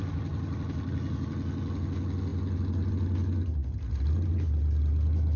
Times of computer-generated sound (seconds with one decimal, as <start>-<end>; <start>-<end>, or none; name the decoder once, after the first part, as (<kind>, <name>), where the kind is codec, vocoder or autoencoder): none